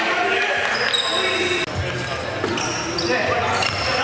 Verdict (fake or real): real